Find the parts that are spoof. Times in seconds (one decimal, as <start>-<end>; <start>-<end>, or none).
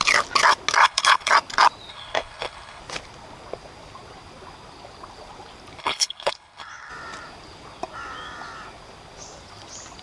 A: 0.8-1.3; 1.9-2.8; 5.8-6.9